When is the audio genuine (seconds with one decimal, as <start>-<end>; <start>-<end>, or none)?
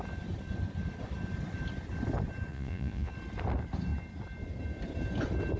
0.0-2.5; 3.1-5.6